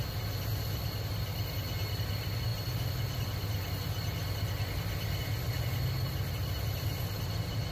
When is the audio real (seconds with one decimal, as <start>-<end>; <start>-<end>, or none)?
0.0-7.7